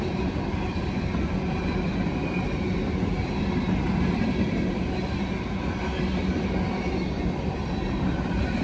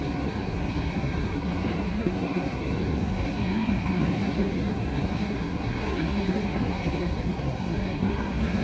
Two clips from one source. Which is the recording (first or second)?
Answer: first